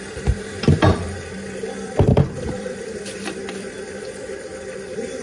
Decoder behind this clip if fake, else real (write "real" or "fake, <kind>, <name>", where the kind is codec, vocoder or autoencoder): fake, vocoder, BigVGAN v2